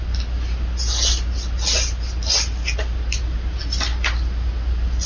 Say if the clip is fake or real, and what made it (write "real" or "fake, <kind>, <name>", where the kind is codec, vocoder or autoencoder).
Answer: real